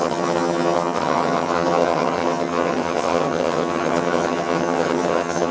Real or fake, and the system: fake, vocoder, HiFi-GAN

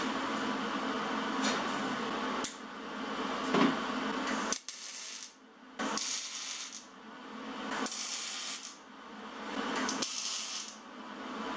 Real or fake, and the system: real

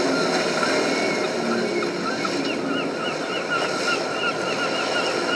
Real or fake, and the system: real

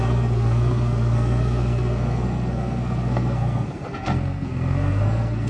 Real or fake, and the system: fake, codec, SNAC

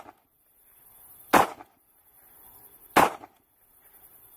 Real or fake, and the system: real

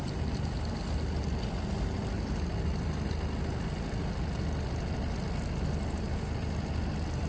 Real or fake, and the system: real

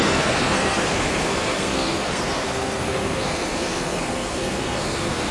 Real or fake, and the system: fake, codec, SNAC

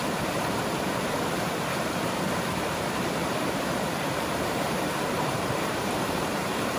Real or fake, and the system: fake, vocoder, BigVGAN v2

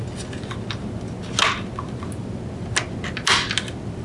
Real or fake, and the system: real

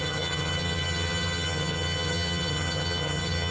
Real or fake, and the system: fake, vocoder, HiFi-GAN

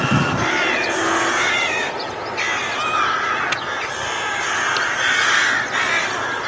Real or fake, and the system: real